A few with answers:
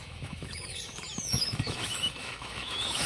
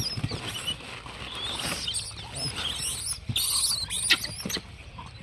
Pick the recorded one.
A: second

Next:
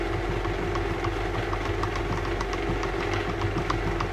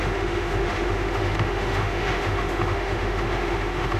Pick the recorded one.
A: first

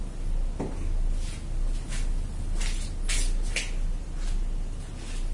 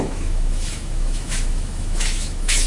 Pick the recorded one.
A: first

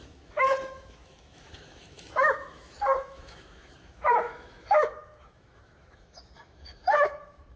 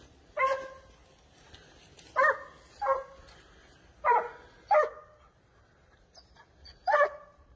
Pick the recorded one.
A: second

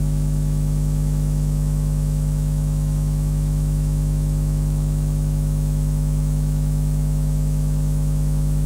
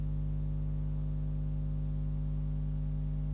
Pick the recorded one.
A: second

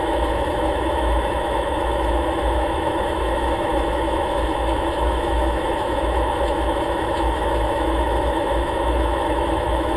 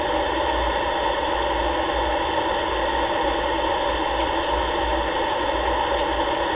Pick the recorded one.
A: second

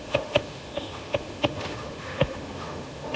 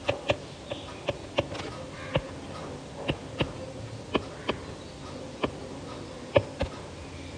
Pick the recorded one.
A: second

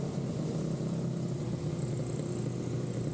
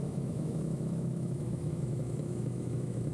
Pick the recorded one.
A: first